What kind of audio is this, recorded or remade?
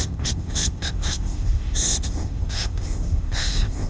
remade